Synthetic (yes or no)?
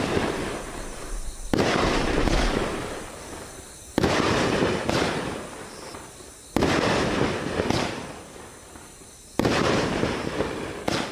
yes